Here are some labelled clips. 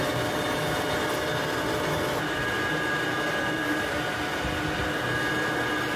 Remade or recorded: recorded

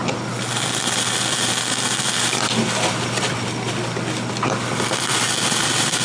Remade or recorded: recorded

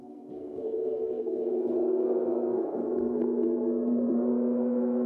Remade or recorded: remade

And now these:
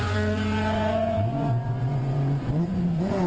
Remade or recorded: remade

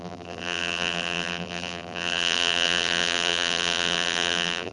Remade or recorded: remade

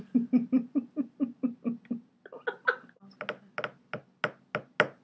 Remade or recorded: recorded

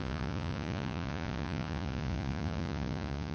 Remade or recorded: remade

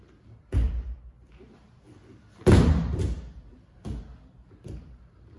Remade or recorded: recorded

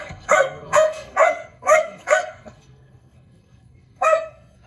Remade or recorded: remade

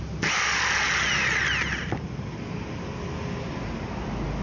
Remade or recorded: recorded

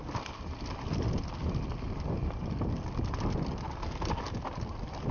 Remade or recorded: recorded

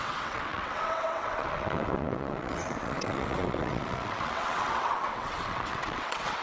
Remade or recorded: remade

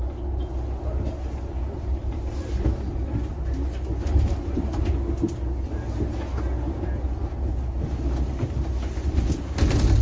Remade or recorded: recorded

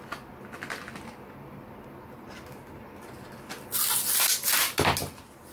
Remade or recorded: recorded